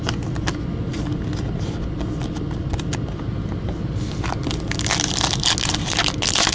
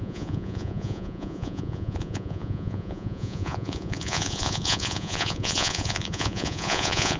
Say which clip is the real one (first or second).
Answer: first